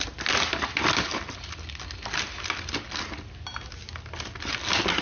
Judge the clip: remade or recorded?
recorded